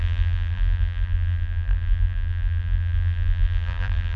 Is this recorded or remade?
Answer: remade